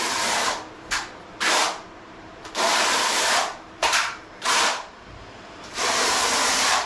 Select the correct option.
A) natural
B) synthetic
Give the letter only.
B